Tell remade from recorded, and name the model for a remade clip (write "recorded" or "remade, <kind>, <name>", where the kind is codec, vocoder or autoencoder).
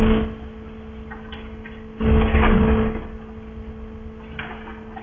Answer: recorded